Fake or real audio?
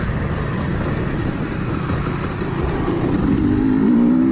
real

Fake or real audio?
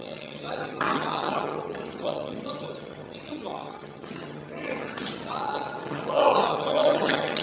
fake